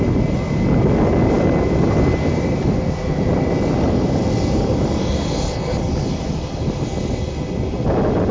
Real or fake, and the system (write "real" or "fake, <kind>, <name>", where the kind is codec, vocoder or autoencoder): real